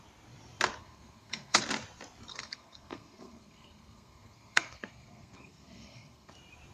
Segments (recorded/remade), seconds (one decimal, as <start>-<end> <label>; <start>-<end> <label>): 0.0-0.8 recorded; 0.8-1.6 remade; 1.6-2.3 recorded; 2.3-6.3 remade; 6.3-6.7 recorded